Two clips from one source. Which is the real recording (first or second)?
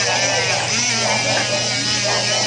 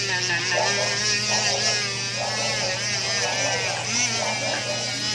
second